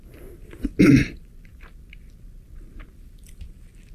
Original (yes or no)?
yes